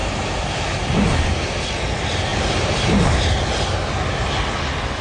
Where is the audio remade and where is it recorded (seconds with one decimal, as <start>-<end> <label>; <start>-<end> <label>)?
0.0-2.3 recorded; 2.3-3.2 remade; 3.2-5.0 recorded

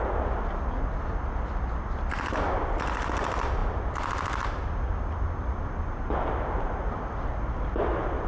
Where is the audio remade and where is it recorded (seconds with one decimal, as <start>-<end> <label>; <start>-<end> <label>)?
0.0-8.3 recorded

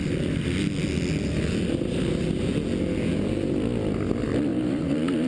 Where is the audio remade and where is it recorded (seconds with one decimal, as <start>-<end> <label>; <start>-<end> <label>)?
0.0-4.5 recorded; 4.5-5.3 remade